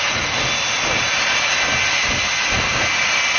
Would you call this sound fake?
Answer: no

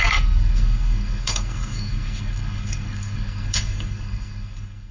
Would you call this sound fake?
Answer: yes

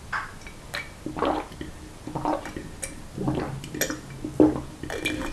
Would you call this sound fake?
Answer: no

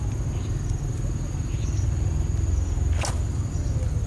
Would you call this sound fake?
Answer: no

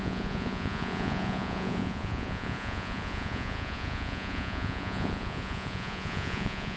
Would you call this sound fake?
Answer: yes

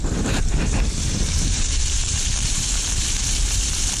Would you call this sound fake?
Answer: yes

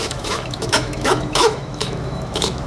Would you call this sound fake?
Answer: yes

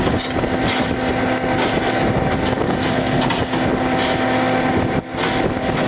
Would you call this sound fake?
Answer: no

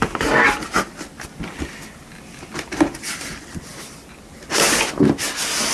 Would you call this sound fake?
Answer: no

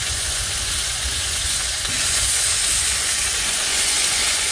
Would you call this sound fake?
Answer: yes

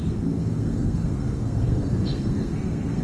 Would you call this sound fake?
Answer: yes